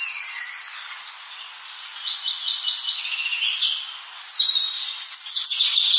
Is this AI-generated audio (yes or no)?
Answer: no